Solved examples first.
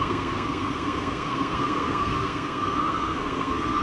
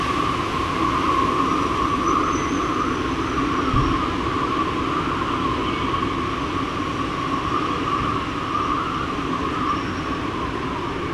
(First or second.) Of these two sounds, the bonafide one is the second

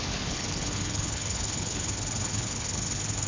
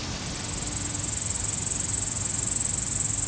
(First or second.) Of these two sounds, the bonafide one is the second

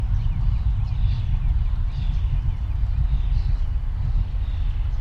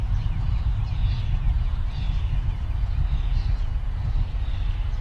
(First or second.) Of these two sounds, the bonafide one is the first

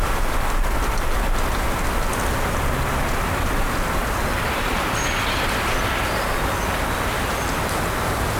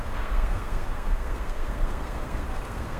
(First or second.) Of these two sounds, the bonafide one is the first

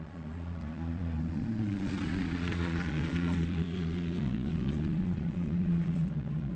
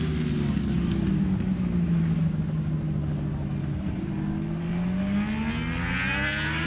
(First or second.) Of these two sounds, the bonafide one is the second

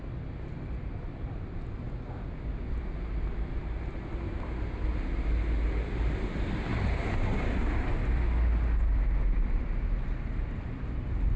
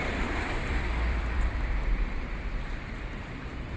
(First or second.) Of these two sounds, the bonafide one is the first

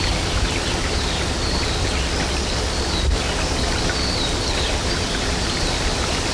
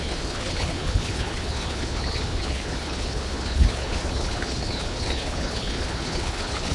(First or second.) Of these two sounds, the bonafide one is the first